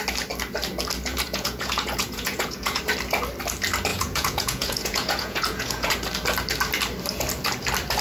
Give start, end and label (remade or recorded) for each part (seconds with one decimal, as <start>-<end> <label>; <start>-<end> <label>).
0.0-1.1 recorded; 1.1-2.8 remade; 2.8-3.9 recorded; 3.9-5.9 remade; 5.9-8.0 recorded